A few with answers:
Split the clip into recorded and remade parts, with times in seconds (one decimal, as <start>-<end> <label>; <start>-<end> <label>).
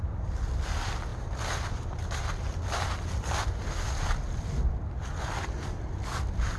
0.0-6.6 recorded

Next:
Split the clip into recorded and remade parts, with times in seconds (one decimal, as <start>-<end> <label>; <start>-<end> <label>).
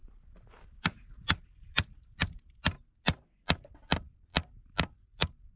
0.0-5.6 recorded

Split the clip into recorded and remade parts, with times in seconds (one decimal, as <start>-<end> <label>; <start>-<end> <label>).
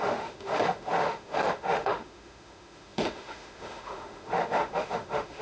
0.0-5.4 remade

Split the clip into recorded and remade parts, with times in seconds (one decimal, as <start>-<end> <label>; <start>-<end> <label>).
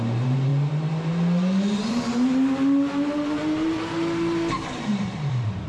0.0-0.5 remade; 0.5-1.9 recorded; 1.9-5.7 remade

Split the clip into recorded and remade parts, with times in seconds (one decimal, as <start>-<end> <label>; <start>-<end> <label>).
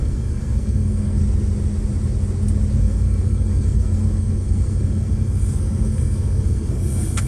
0.0-1.2 remade; 1.2-2.8 recorded; 2.8-7.3 remade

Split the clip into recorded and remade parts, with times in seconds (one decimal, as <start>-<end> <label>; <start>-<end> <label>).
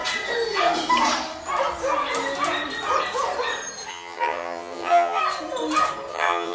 0.0-3.9 recorded; 3.9-5.2 remade; 5.2-6.1 recorded; 6.1-6.5 remade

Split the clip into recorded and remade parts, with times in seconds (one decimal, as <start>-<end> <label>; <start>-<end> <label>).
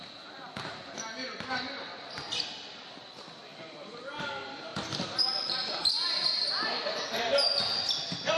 0.0-8.4 recorded